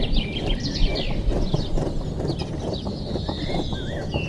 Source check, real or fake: real